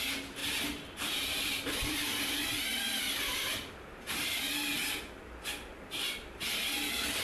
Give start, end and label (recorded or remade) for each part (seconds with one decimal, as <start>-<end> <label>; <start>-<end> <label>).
0.0-0.4 recorded; 0.4-4.7 remade; 4.7-7.2 recorded